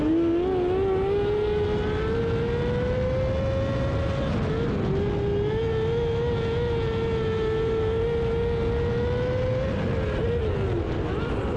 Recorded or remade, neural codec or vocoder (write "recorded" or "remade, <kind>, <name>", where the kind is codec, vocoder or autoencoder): recorded